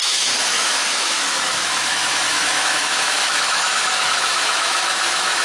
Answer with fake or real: fake